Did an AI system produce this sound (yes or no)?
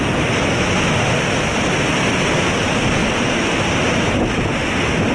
no